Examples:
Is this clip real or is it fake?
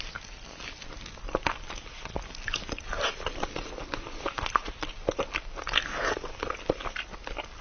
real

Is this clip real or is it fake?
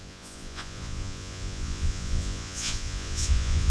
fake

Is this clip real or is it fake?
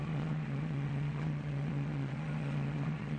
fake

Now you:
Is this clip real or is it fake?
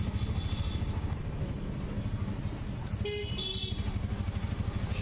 real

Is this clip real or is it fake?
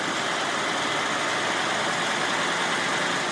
real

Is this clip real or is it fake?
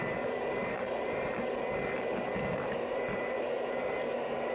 real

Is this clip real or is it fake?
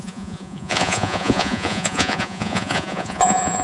fake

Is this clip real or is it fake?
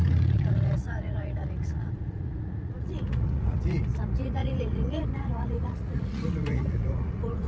fake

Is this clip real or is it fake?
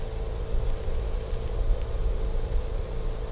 real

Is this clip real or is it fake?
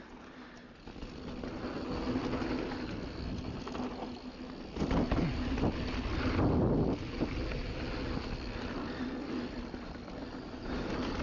real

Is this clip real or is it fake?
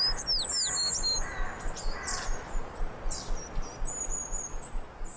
real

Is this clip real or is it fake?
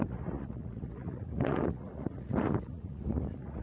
fake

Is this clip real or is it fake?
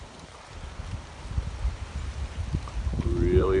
real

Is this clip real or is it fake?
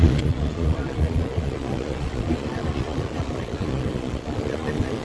fake